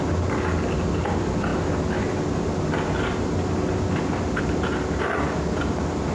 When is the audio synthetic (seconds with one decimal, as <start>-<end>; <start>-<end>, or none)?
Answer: none